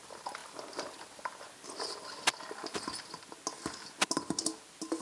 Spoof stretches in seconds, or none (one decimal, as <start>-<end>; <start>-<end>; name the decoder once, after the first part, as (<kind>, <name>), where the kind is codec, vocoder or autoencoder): none